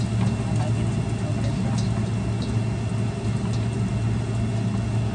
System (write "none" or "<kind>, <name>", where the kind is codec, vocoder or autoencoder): none